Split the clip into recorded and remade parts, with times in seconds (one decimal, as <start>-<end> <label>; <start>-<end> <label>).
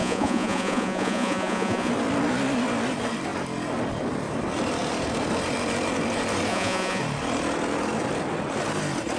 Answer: 0.0-1.9 remade; 1.9-6.5 recorded; 6.5-7.0 remade; 7.0-9.2 recorded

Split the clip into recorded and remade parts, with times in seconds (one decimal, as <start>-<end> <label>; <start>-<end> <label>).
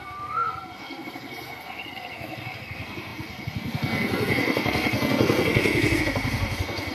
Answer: 0.0-6.9 remade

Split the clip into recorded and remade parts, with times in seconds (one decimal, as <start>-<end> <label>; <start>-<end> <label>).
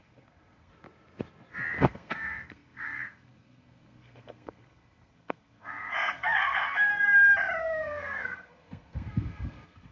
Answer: 0.0-0.7 remade; 0.7-1.8 recorded; 1.8-6.9 remade; 6.9-7.6 recorded; 7.6-9.9 remade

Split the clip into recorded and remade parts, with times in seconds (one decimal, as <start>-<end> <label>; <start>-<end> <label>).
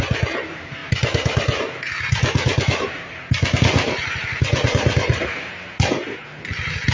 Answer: 0.0-6.9 recorded